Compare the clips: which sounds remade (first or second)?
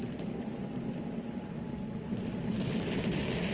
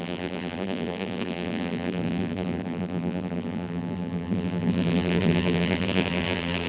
second